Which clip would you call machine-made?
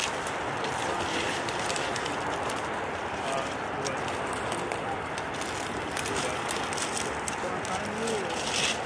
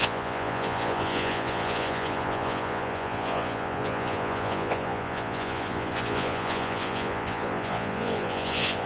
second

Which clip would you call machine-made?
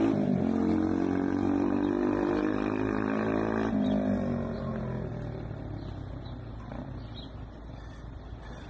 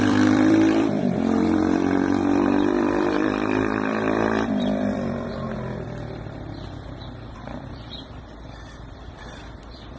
second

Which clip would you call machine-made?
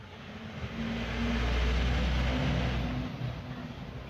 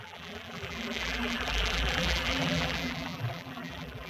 second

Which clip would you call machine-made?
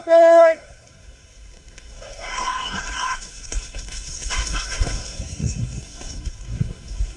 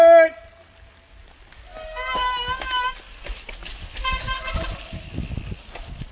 first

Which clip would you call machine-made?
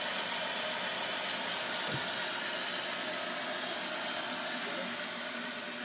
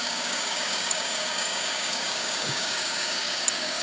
second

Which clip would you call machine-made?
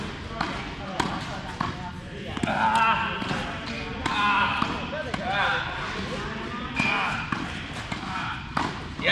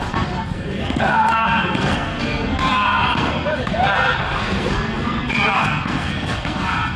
second